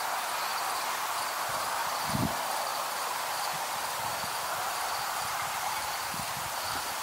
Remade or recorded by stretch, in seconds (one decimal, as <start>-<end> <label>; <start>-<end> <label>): 0.0-2.7 recorded; 2.7-7.0 remade